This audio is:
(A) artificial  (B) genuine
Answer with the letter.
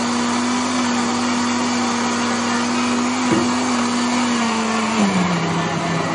B